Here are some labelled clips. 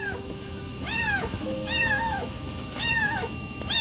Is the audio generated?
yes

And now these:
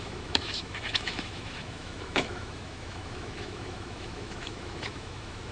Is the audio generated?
yes